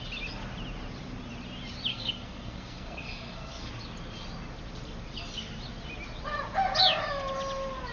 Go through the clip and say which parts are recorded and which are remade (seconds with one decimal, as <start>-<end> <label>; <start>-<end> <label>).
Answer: 0.0-1.9 recorded; 1.9-3.7 remade; 3.7-7.9 recorded

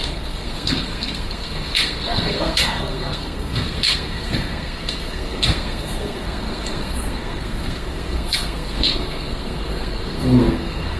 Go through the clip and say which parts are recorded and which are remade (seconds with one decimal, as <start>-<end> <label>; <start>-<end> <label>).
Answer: 0.0-11.0 remade

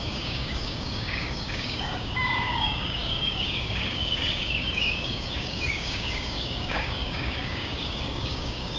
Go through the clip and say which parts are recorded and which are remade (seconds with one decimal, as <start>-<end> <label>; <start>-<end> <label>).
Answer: 0.0-8.8 remade

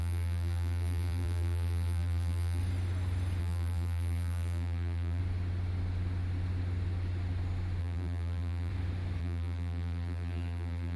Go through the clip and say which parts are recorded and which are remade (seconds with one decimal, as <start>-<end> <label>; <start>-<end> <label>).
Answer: 0.0-2.6 remade; 2.6-3.4 recorded; 3.4-5.2 remade; 5.2-7.8 recorded; 7.8-8.7 remade; 8.7-9.2 recorded; 9.2-11.0 remade

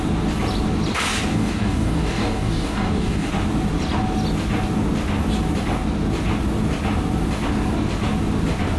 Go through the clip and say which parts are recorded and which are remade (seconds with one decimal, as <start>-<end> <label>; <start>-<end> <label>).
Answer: 0.0-1.3 recorded; 1.3-3.3 remade; 3.3-8.8 recorded

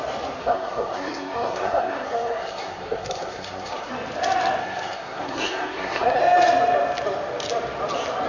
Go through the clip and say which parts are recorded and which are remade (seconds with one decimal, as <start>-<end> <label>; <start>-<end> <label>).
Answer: 0.0-0.4 recorded; 0.4-3.9 remade; 3.9-4.6 recorded; 4.6-6.2 remade; 6.2-8.3 recorded